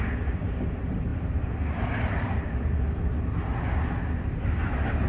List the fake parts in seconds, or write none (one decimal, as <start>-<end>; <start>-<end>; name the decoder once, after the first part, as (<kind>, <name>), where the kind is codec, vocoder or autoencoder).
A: none